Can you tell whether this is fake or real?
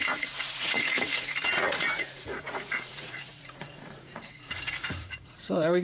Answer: fake